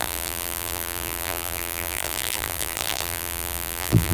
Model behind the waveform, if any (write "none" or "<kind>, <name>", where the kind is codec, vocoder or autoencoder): vocoder, BigVGAN v2